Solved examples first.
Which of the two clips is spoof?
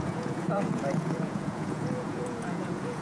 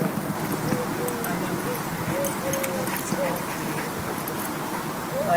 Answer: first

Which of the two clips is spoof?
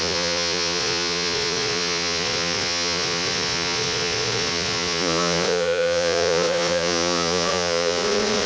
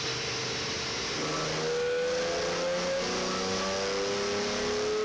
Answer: first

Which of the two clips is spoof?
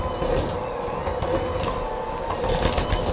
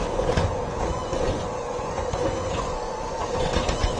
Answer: second